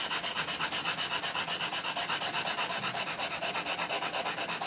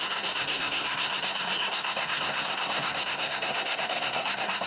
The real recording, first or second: first